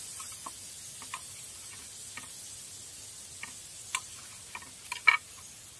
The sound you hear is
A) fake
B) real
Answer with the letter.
B